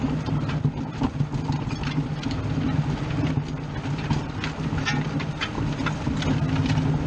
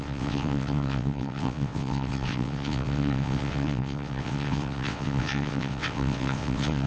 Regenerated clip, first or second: second